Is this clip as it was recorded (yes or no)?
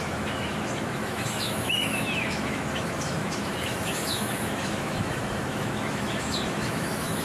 no